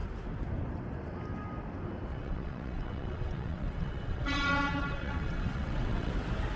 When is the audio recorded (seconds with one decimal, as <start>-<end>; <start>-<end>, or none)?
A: 0.0-2.1; 6.1-6.6